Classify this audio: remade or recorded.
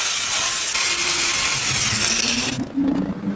recorded